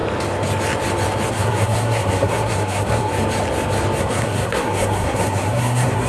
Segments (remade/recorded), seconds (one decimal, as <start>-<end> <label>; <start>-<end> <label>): 0.0-1.3 recorded; 1.3-3.1 remade; 3.1-4.0 recorded; 4.0-6.1 remade